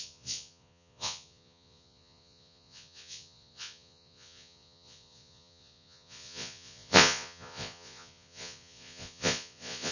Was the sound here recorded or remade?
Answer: remade